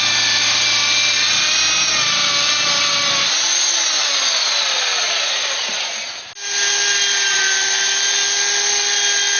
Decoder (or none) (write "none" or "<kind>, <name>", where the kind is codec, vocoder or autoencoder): none